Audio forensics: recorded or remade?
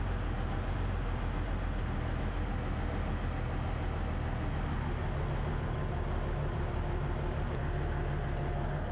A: recorded